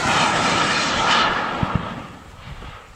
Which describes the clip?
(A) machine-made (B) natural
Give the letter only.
A